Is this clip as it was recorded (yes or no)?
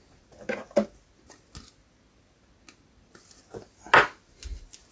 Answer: yes